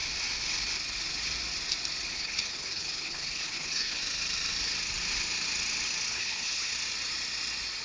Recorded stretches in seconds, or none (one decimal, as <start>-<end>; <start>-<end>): 0.0-2.1; 4.0-6.1; 6.7-7.8